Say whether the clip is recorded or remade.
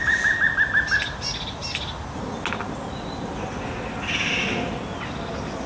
recorded